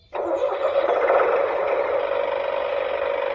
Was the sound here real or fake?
real